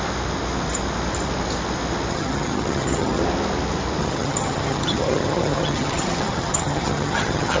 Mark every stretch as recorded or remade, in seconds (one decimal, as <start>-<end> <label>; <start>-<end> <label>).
0.0-2.1 recorded; 2.1-3.2 remade; 3.2-4.0 recorded; 4.0-7.6 remade